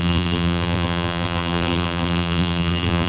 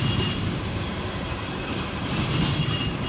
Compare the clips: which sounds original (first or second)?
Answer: second